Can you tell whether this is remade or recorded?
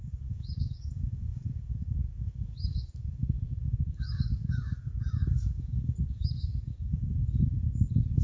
remade